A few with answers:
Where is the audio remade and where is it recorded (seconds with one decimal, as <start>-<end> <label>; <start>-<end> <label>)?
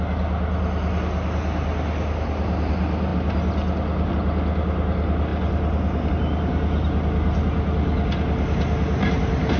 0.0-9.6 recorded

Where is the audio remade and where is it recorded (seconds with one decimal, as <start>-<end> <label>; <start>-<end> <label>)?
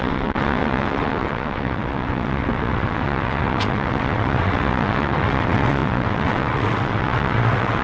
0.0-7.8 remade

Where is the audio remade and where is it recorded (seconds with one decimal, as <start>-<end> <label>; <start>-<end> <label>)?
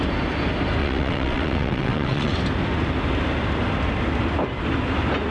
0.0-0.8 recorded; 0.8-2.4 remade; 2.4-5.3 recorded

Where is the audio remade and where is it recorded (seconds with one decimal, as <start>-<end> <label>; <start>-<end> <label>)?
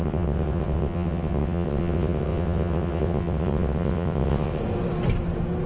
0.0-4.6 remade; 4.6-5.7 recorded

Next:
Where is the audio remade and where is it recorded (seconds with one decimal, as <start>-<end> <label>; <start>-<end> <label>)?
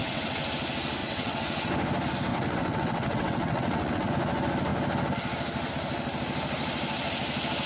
0.0-0.5 remade; 0.5-1.0 recorded; 1.0-1.7 remade; 1.7-2.3 recorded; 2.3-4.1 remade; 4.1-7.7 recorded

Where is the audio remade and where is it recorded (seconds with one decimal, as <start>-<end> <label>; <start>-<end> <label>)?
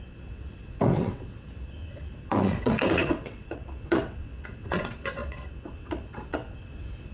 0.0-7.1 remade